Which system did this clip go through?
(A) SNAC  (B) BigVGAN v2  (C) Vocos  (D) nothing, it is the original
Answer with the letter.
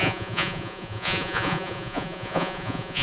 C